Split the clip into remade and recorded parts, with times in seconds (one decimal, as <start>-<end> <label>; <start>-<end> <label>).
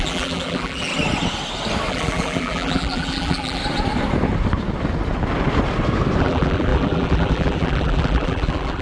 0.0-0.9 remade; 0.9-1.9 recorded; 1.9-3.6 remade; 3.6-6.2 recorded; 6.2-8.8 remade